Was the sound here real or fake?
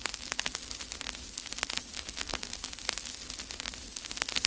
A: real